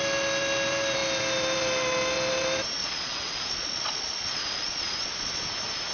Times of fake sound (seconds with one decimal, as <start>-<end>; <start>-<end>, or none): 2.8-5.4